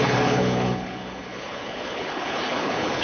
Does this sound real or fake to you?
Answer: fake